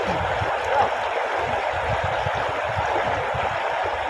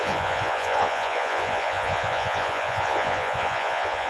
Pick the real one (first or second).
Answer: first